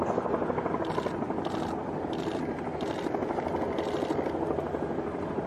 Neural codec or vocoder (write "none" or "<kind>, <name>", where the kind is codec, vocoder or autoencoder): none